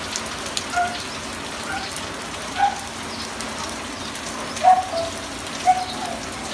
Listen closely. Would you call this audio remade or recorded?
recorded